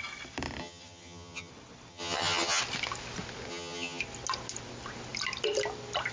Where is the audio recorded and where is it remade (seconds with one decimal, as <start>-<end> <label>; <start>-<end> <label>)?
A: 0.0-0.6 recorded; 0.6-1.5 remade; 1.5-1.9 recorded; 1.9-2.6 remade; 2.6-3.5 recorded; 3.5-4.0 remade; 4.0-6.1 recorded